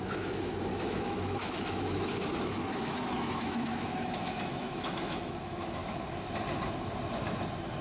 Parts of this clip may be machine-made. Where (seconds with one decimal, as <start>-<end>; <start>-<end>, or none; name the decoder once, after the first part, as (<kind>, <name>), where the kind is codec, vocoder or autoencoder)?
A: 0.0-5.8 (autoencoder, DAC-VAE)